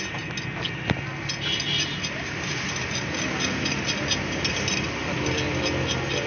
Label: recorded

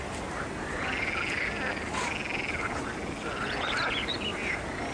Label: recorded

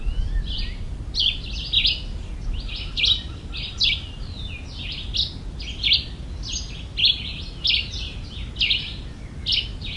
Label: recorded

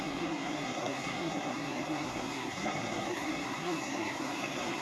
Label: remade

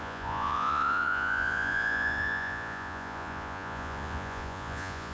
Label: remade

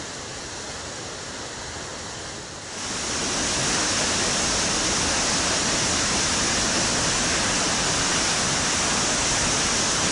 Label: recorded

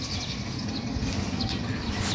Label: recorded